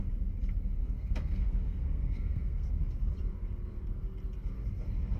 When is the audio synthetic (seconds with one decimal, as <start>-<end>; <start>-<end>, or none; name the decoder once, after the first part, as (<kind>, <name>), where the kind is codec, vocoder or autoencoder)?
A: 0.8-2.7 (codec, SNAC)